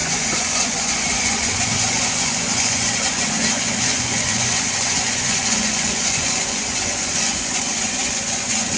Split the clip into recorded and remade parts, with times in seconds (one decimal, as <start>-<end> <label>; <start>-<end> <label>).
0.0-8.8 remade